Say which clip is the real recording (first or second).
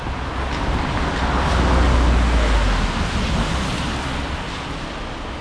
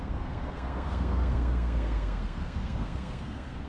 first